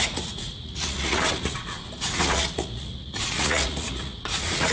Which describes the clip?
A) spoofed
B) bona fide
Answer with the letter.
A